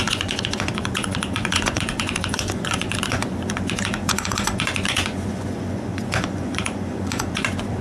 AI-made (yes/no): yes